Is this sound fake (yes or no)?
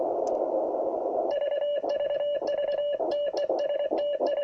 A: no